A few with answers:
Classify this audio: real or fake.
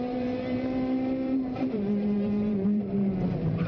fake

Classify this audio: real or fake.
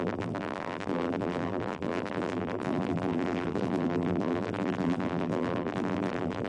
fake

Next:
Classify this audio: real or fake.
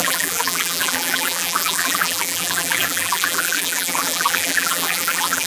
fake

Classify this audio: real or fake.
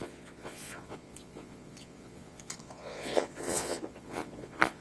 fake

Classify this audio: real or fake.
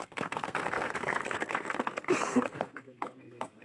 fake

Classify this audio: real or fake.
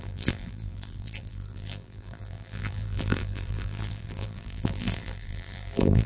fake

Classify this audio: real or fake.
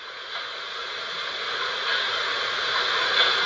fake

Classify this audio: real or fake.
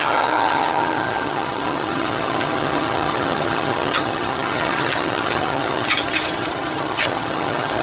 fake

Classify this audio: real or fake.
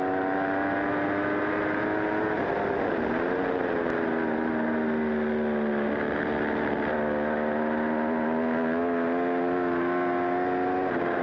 real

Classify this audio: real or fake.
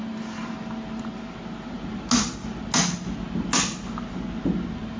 real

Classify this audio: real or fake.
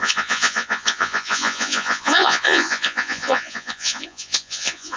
fake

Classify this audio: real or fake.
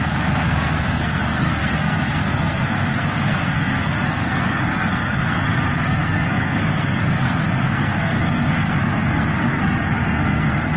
fake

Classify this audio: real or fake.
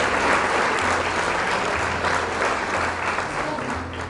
real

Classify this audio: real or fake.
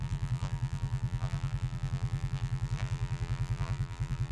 fake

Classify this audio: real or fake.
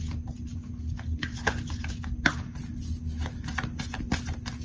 real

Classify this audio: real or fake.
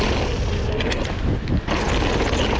real